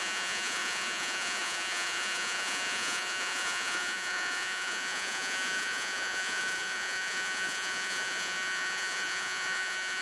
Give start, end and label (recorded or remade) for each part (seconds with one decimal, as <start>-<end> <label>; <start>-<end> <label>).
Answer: 0.0-10.0 remade